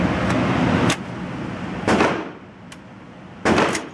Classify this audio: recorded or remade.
recorded